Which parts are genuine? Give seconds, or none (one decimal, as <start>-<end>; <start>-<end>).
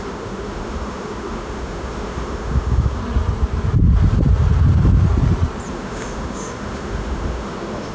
3.0-5.7